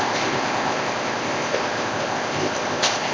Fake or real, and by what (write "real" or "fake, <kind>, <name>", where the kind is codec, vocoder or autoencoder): fake, codec, ZipCodec